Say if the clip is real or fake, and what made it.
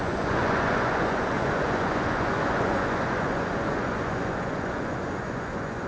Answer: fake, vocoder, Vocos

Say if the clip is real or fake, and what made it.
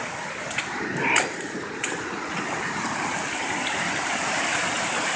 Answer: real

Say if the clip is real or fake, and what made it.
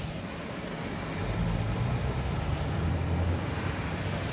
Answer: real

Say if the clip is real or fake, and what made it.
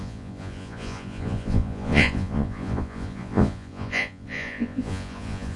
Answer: fake, vocoder, Vocos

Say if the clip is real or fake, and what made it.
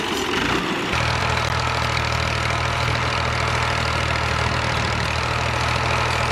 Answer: real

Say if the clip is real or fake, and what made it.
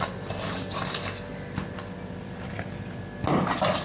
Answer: real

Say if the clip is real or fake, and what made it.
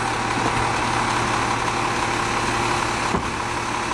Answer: real